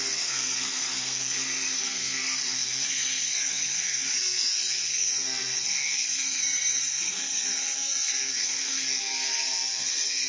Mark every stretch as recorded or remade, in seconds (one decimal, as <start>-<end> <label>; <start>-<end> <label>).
0.0-10.3 remade